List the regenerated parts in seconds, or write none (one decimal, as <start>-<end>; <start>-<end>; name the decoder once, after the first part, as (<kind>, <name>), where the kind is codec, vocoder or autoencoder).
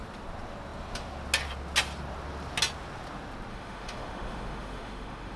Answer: 3.5-5.4 (autoencoder, DAC-VAE)